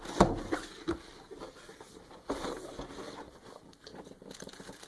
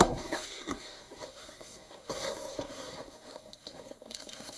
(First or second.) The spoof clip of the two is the second